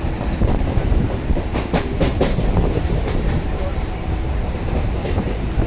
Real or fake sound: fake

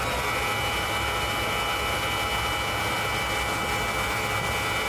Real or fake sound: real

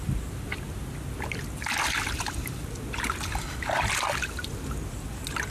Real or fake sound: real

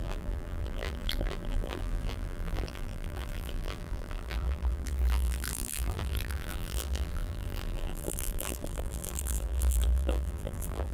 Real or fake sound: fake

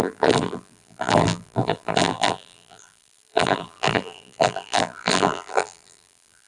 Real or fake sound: fake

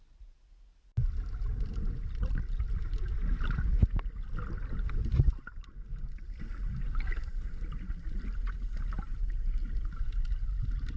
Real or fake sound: real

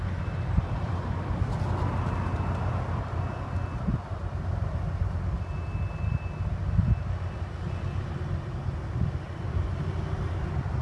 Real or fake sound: real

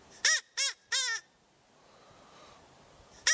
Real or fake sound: real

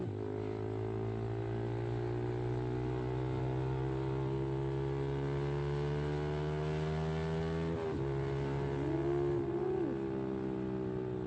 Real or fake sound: real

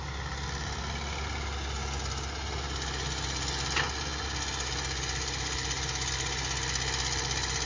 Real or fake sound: real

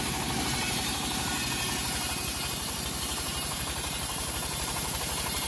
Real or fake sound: fake